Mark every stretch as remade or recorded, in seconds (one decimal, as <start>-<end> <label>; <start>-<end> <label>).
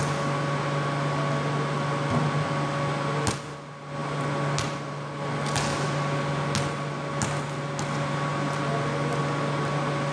0.0-10.1 recorded